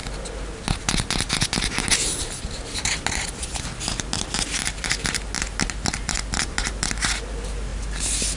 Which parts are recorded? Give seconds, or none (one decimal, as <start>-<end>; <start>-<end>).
0.0-2.2; 7.7-8.4